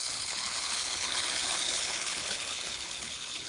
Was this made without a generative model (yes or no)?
no